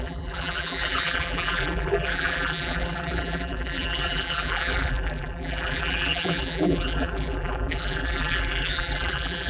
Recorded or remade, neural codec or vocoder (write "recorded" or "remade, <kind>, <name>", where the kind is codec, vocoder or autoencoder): remade, vocoder, BigVGAN v2